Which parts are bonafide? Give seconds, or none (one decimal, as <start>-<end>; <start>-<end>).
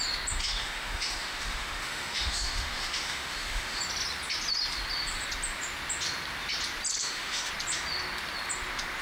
0.0-0.4; 3.8-7.0; 7.5-9.0